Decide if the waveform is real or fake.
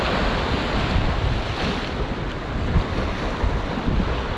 real